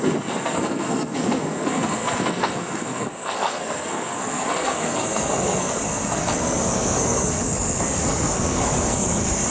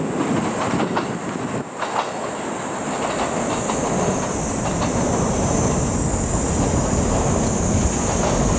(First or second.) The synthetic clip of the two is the first